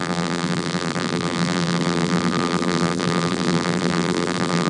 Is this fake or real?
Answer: fake